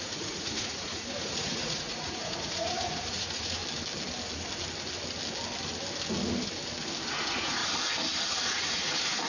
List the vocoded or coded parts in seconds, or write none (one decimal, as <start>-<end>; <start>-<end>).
0.0-3.6; 7.1-7.6; 8.3-9.3